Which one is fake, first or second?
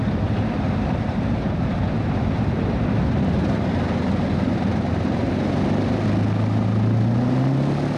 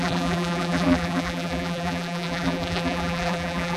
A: second